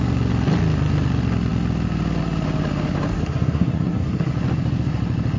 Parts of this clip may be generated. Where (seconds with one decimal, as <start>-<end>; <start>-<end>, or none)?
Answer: 3.1-4.3